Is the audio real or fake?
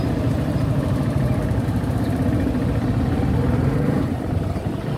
fake